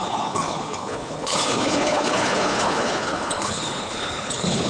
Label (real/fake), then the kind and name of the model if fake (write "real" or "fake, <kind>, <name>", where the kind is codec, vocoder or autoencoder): fake, codec, HILCodec